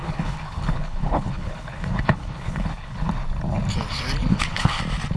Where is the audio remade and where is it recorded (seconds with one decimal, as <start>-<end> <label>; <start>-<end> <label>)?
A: 0.0-3.1 remade; 3.1-4.3 recorded; 4.3-4.8 remade; 4.8-5.2 recorded